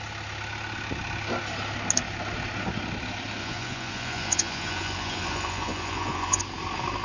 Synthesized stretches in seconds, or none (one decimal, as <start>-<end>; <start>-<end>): 3.4-6.4